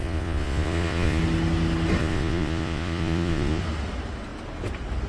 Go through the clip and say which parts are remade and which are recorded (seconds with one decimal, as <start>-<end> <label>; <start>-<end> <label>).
0.0-1.2 remade; 1.2-2.0 recorded; 2.0-3.6 remade; 3.6-5.1 recorded